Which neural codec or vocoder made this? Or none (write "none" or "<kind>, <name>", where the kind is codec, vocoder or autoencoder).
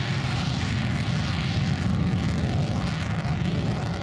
none